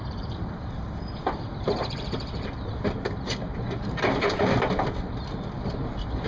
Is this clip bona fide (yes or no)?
no